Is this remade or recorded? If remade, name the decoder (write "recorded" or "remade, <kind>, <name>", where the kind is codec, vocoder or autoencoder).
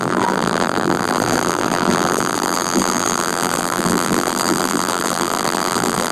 remade, vocoder, BigVGAN v2